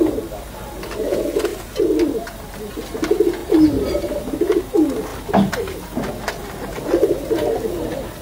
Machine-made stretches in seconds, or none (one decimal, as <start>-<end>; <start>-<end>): 1.5-2.7; 3.4-4.6